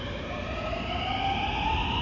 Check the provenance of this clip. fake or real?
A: fake